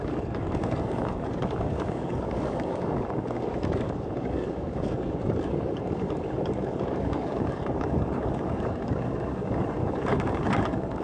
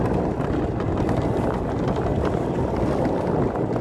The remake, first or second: first